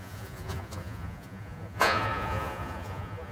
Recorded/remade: remade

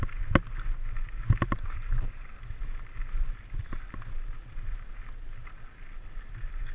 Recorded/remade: recorded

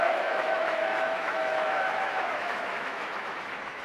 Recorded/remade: remade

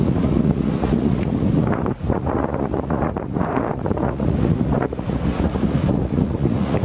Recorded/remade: remade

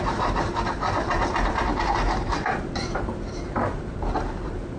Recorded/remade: remade